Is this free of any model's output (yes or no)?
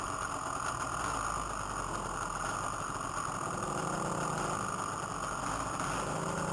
yes